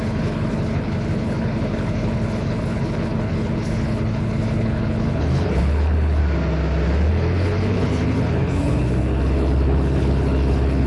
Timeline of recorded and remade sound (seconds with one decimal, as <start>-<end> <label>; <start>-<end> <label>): 0.0-6.2 remade; 6.2-7.1 recorded; 7.1-10.9 remade